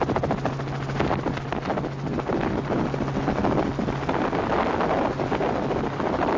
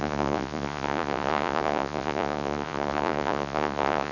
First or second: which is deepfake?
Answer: second